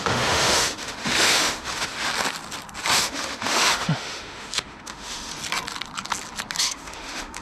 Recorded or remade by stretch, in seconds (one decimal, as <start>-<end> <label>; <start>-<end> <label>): 0.0-2.1 remade; 2.1-2.9 recorded; 2.9-5.3 remade; 5.3-6.6 recorded; 6.6-7.4 remade